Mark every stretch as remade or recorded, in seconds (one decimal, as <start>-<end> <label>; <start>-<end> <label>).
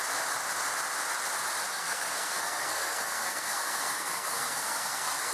0.0-1.7 recorded; 1.7-5.3 remade